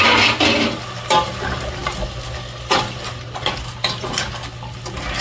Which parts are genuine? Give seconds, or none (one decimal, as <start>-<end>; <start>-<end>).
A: 0.0-5.2